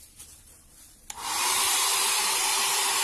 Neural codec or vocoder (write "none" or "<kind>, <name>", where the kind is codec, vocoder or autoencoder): none